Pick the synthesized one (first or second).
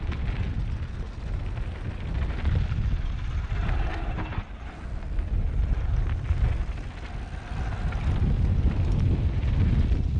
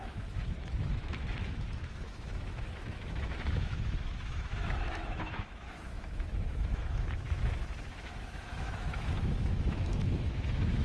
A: second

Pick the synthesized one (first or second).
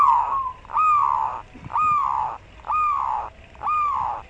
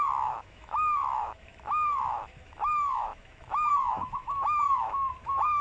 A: second